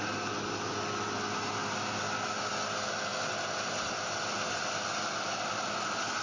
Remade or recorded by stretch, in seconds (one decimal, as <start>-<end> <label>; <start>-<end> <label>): 0.0-6.2 recorded